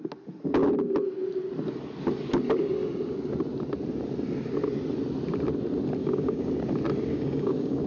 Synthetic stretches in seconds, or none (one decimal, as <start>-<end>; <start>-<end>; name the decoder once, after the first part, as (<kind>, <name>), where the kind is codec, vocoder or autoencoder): 6.0-6.5 (codec, DAC); 7.1-7.9